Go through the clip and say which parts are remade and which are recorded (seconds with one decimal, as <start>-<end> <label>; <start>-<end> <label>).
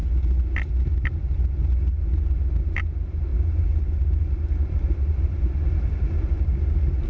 0.0-3.3 recorded; 3.3-3.8 remade; 3.8-4.2 recorded; 4.2-6.1 remade; 6.1-7.1 recorded